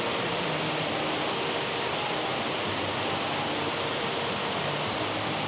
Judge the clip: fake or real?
real